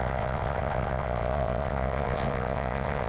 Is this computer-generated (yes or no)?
yes